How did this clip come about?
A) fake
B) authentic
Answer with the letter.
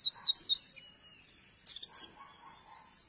B